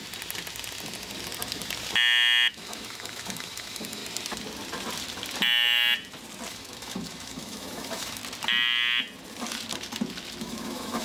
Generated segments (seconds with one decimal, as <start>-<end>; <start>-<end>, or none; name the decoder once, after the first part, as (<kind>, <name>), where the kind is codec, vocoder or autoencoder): 2.5-4.0 (autoencoder, DAC-VAE); 6.5-8.2; 10.4-11.0